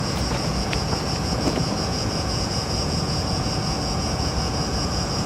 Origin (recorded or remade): remade